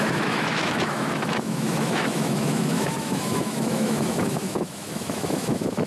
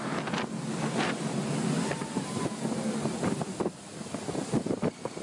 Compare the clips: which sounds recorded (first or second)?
second